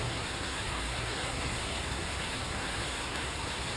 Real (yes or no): no